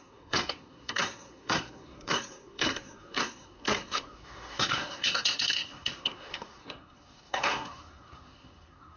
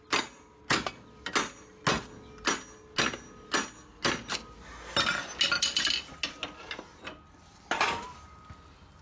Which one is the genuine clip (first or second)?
second